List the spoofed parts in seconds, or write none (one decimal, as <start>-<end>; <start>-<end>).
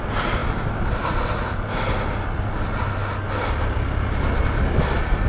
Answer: none